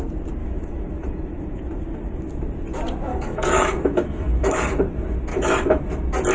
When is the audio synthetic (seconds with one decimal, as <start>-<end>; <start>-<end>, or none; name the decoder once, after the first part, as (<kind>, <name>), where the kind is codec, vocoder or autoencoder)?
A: 0.4-1.6 (autoencoder, DAC-VAE); 3.1-4.8; 5.3-5.8